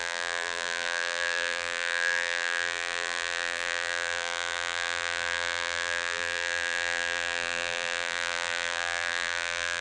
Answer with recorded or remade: remade